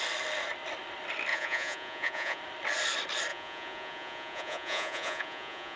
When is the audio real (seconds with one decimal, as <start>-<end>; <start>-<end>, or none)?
0.0-1.3; 2.4-3.3